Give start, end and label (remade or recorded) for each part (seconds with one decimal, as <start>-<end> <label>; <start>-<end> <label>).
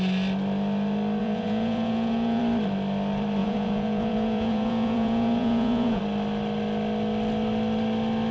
0.0-1.2 recorded; 1.2-2.4 remade; 2.4-3.4 recorded; 3.4-6.0 remade; 6.0-8.3 recorded